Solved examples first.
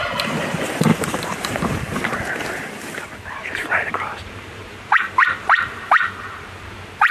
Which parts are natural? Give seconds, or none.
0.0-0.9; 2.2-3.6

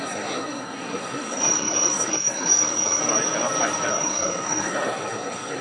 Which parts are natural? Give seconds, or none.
3.0-3.9